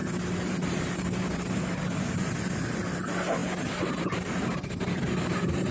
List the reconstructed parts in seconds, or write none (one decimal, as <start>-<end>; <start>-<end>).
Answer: 0.0-3.4; 4.0-5.7